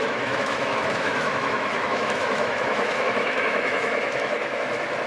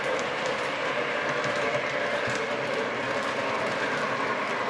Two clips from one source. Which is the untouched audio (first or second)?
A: second